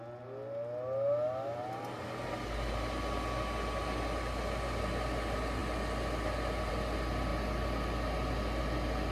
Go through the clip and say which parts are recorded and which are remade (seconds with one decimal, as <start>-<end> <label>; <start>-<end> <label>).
0.0-9.1 recorded